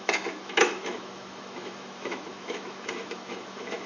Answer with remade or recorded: remade